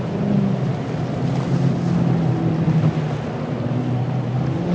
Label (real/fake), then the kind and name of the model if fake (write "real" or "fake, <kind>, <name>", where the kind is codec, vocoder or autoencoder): real